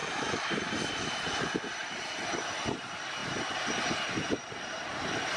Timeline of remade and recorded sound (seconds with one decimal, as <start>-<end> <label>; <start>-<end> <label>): 0.0-0.9 recorded; 0.9-1.8 remade; 1.8-2.8 recorded; 2.8-3.2 remade; 3.2-4.6 recorded; 4.6-5.4 remade